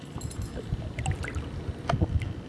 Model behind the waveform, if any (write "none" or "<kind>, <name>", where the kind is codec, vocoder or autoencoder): none